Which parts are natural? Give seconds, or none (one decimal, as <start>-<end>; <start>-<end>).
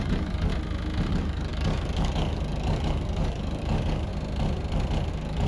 0.5-1.1; 4.1-5.1